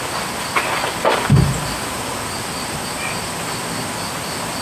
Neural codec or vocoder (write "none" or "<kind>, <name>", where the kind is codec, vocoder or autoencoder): none